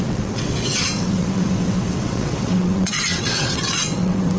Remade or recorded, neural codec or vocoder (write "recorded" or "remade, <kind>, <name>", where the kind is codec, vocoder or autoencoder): remade, vocoder, WaveNeXt